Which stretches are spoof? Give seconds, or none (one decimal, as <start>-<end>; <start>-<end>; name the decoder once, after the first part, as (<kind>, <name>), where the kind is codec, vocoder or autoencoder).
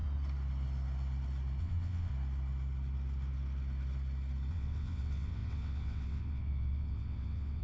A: 1.6-2.1 (vocoder, WaveNeXt); 4.5-7.6